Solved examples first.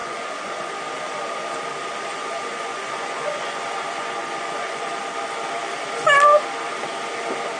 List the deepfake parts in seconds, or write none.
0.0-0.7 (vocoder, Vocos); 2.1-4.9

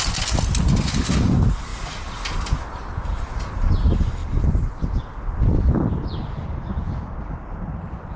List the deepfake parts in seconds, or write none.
none